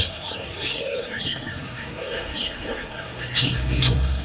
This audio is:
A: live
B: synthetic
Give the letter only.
B